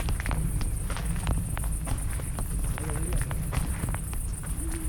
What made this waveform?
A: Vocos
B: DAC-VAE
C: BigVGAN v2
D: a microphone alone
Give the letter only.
D